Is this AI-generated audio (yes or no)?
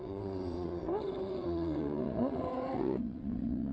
yes